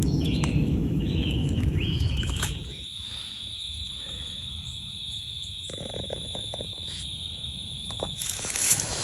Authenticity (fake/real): fake